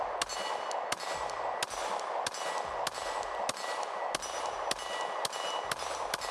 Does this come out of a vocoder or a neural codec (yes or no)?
no